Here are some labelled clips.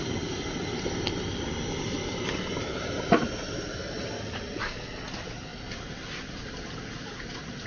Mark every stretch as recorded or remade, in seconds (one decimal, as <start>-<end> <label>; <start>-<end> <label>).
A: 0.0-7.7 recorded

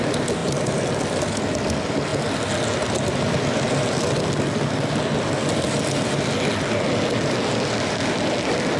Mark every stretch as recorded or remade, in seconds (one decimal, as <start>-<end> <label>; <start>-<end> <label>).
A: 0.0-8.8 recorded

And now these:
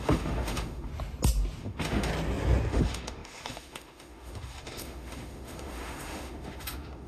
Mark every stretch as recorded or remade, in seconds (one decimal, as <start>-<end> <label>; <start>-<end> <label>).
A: 0.0-0.9 remade; 0.9-1.6 recorded; 1.6-2.1 remade; 2.1-2.7 recorded; 2.7-7.1 remade